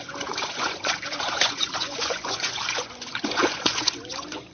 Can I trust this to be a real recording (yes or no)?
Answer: no